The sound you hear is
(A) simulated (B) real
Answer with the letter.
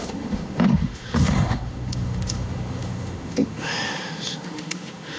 A